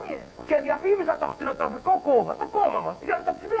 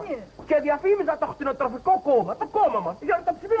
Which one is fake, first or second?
first